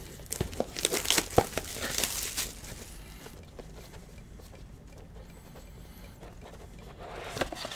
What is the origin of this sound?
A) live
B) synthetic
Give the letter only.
A